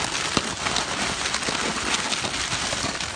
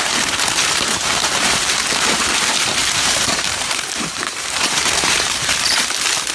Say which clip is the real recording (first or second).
first